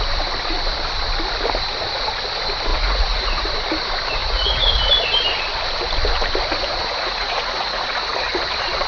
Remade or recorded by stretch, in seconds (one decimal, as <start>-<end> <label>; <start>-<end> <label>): 0.0-2.7 recorded; 2.7-3.5 remade; 3.5-4.2 recorded; 4.2-4.9 remade; 4.9-6.7 recorded; 6.7-8.1 remade; 8.1-8.9 recorded